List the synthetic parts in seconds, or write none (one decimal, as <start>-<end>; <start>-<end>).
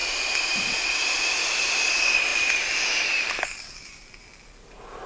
2.3-4.0